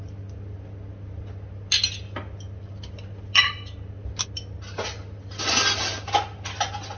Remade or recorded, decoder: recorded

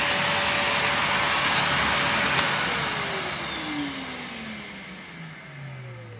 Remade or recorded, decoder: recorded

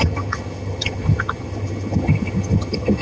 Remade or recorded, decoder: remade, vocoder, HiFi-GAN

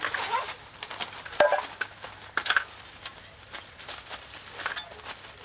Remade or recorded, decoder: recorded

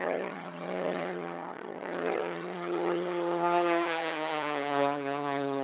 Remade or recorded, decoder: remade, vocoder, HiFi-GAN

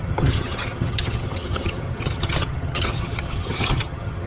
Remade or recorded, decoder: remade, vocoder, HiFi-GAN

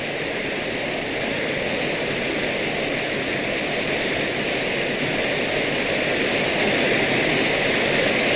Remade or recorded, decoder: recorded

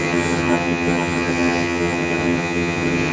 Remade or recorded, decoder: remade, vocoder, HiFi-GAN